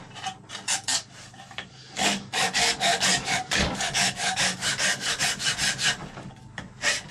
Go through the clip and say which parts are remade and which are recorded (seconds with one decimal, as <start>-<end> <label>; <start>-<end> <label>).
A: 0.0-0.9 recorded; 0.9-5.2 remade; 5.2-6.0 recorded; 6.0-6.6 remade; 6.6-7.1 recorded